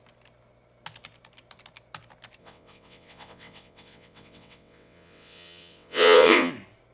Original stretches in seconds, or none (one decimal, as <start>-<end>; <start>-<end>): 0.0-2.4; 6.5-6.9